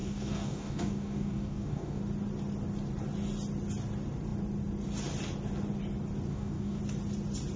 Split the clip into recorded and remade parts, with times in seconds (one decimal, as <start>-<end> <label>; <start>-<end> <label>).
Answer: 0.0-2.0 remade; 2.0-6.3 recorded; 6.3-6.8 remade; 6.8-7.6 recorded